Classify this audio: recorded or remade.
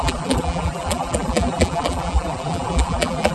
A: remade